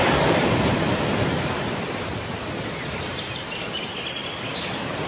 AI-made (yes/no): yes